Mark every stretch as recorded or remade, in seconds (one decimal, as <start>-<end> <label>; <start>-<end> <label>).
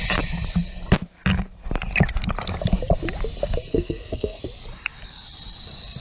0.0-3.7 recorded; 3.7-4.4 remade; 4.4-6.0 recorded